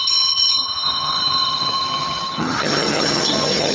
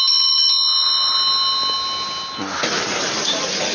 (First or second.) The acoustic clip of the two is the second